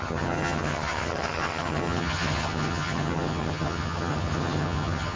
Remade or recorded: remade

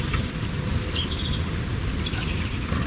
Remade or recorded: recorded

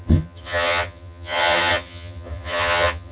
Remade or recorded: remade